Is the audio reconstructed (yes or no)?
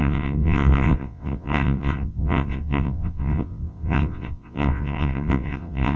yes